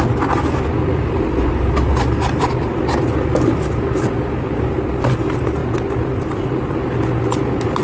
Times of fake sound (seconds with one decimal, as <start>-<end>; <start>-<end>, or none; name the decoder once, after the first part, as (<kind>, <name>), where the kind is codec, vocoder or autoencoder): none